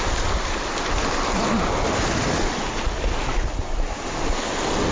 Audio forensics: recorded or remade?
recorded